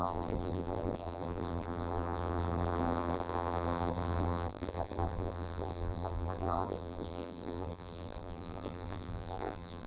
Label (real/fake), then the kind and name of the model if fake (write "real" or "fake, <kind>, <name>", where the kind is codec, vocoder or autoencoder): fake, vocoder, BigVGAN v2